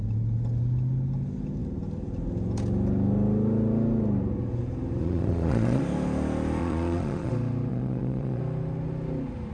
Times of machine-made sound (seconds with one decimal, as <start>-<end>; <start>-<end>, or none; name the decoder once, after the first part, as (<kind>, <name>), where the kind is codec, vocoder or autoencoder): 5.0-5.8 (vocoder, Vocos); 6.6-7.3; 7.7-8.4